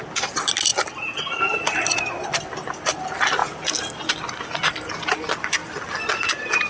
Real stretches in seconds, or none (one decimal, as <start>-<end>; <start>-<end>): 0.0-6.7